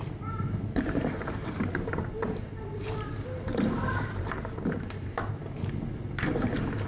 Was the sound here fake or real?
fake